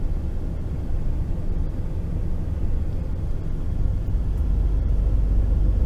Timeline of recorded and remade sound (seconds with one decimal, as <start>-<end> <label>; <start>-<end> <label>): 0.0-5.9 recorded